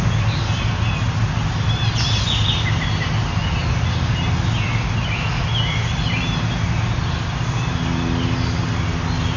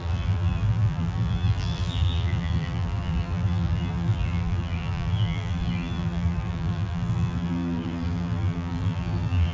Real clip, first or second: first